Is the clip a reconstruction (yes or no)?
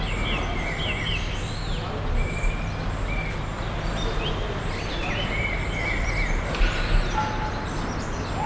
no